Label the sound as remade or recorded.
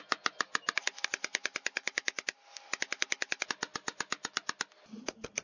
recorded